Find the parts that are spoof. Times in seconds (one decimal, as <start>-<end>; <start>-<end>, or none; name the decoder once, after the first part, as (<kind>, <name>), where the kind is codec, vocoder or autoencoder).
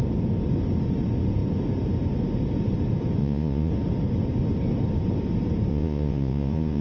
3.2-3.7 (vocoder, Vocos); 5.7-6.8